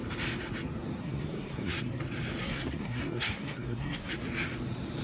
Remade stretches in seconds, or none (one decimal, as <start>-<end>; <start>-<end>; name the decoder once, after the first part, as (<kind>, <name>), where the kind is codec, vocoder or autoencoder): 1.0-2.0 (codec, SNAC); 2.4-4.1

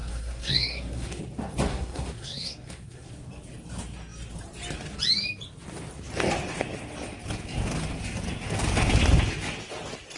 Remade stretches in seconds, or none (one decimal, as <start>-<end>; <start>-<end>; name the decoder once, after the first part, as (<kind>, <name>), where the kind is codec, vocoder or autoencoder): 0.0-1.2 (codec, SNAC); 1.7-3.1

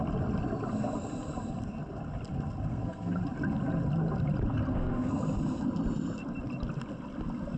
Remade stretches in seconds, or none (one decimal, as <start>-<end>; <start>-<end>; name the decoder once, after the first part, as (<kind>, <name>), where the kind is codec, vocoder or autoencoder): 2.7-3.2 (codec, SNAC); 4.7-5.2

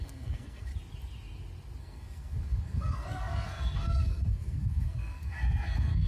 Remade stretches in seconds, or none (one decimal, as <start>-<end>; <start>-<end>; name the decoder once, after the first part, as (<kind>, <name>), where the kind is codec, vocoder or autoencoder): 0.0-0.7 (codec, SNAC); 1.8-6.1

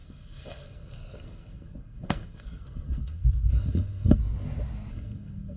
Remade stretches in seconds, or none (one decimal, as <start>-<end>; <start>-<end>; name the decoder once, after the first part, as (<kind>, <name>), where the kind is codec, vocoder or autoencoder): 0.0-4.2 (codec, SNAC); 4.9-5.6

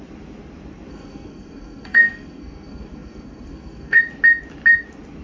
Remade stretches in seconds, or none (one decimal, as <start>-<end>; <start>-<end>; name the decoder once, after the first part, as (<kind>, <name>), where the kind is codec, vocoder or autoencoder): 0.9-4.0 (codec, SNAC)

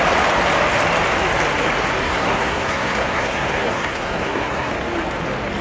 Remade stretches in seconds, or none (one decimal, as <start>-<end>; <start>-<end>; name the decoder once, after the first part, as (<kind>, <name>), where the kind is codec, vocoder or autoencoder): 2.0-4.7 (codec, SNAC)